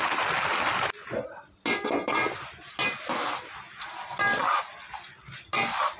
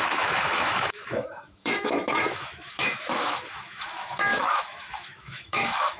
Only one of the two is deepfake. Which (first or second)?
second